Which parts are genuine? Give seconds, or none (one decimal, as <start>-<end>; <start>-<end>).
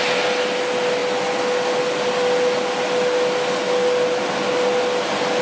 0.0-5.4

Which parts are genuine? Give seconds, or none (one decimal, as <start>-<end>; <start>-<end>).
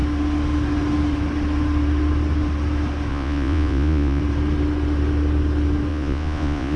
0.0-3.1; 4.2-5.9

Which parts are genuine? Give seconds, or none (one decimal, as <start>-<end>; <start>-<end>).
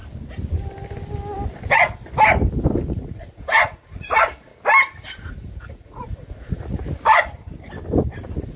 0.0-2.9; 4.5-5.3; 6.8-8.2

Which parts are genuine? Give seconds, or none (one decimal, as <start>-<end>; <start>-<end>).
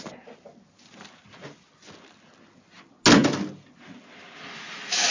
0.0-4.6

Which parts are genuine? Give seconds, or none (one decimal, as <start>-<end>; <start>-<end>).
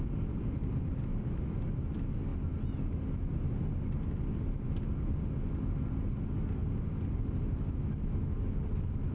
0.0-9.1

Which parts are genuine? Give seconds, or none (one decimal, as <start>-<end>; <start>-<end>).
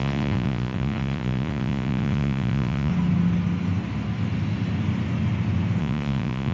2.9-5.8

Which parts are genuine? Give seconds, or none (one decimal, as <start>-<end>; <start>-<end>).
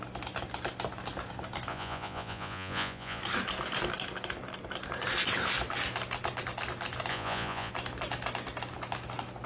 0.0-1.7; 3.2-7.1; 7.7-9.5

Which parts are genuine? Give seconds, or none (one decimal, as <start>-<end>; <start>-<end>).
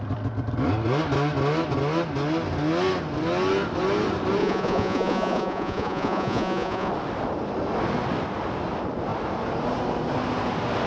0.0-4.4; 6.9-10.9